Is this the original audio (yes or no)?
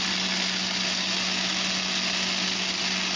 yes